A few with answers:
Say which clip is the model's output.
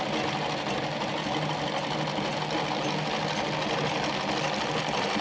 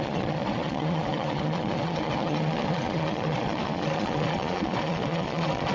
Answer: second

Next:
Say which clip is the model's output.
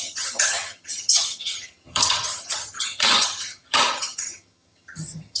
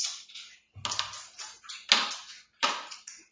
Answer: first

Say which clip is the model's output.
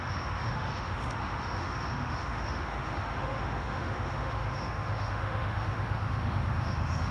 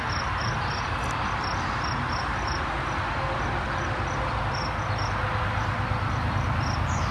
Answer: first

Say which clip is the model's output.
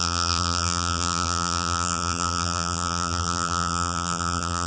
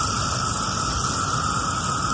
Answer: first